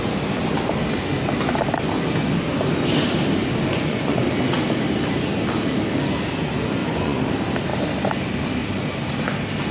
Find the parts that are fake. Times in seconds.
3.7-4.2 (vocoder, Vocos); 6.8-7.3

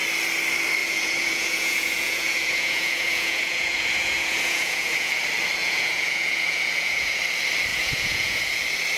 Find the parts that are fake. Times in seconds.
0.8-5.1 (vocoder, Vocos); 5.6-7.2; 7.7-8.6

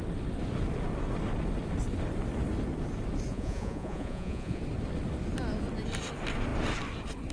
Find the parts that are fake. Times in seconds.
3.3-4.6 (vocoder, Vocos)